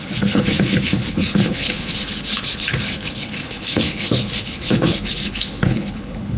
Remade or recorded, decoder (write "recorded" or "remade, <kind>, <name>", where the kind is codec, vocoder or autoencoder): remade, codec, HILCodec